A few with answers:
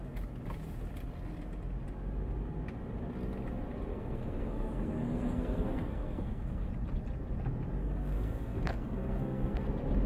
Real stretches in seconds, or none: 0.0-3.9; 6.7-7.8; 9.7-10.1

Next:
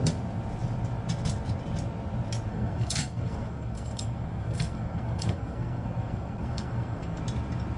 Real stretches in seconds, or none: 0.0-2.5; 7.2-7.8

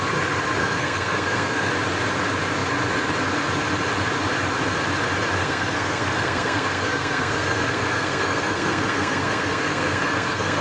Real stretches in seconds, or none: 0.0-0.6; 1.7-5.4

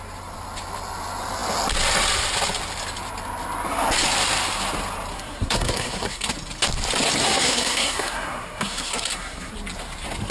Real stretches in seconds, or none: 0.0-5.1; 6.3-7.2; 9.5-10.3

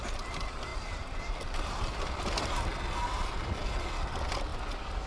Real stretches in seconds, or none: 0.0-5.1

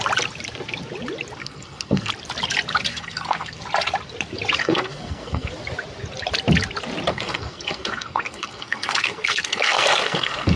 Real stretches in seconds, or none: 0.0-1.4; 2.1-2.9; 3.6-4.6; 5.5-7.1